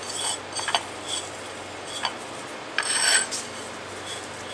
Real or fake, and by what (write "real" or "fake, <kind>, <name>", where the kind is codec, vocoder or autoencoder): real